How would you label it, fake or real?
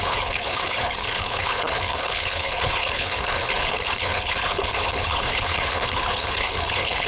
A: fake